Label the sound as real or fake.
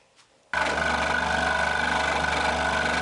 real